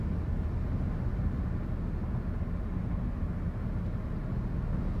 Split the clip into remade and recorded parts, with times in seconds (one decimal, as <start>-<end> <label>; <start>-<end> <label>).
0.0-5.0 recorded